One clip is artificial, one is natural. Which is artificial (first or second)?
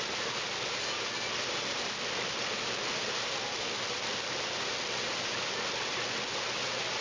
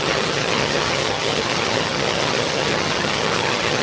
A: second